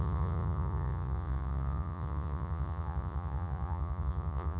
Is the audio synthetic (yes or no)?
yes